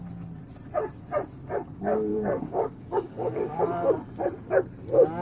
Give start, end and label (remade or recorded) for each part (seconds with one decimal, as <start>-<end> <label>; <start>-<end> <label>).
0.0-2.1 recorded; 2.1-3.6 remade; 3.6-5.2 recorded